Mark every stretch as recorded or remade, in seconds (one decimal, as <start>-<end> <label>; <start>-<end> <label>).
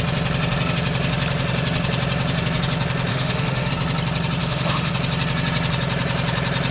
0.0-3.1 recorded; 3.1-3.7 remade; 3.7-4.4 recorded; 4.4-4.9 remade; 4.9-6.7 recorded